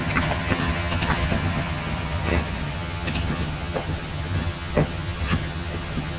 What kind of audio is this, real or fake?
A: fake